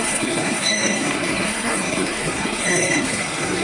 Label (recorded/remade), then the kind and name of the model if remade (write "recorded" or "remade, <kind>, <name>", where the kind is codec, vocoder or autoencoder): remade, codec, SNAC